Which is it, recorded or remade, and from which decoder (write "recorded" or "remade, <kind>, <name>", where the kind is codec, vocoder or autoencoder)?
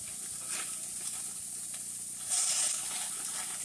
recorded